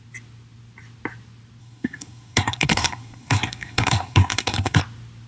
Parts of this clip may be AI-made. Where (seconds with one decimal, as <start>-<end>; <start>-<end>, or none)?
1.6-4.8